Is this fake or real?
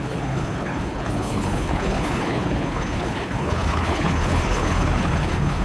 fake